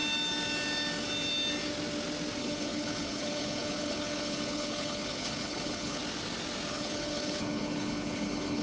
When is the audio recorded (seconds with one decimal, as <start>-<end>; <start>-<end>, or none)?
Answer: 0.0-2.4; 6.0-6.7